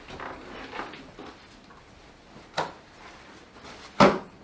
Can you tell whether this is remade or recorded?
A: recorded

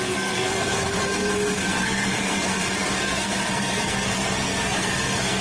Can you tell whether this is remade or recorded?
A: remade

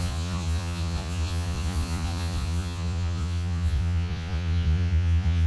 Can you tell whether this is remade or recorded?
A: remade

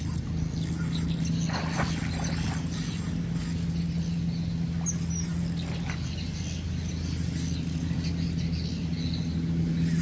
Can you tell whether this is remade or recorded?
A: recorded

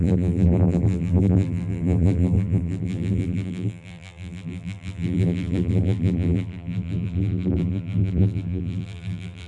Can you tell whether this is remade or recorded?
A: remade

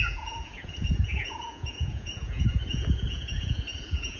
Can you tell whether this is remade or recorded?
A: remade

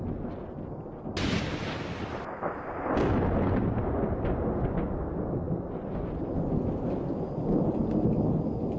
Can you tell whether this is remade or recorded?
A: recorded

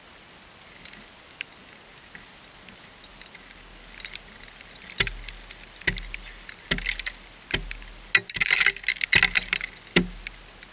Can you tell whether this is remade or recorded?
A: recorded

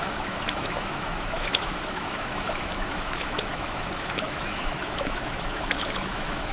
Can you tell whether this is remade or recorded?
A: remade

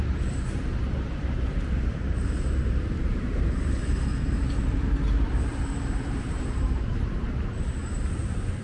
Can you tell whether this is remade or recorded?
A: remade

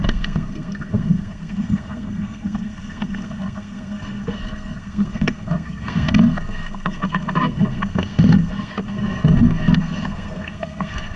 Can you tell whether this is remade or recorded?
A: remade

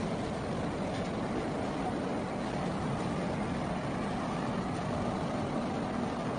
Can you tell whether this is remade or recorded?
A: recorded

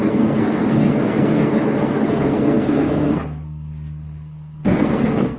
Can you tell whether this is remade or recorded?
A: remade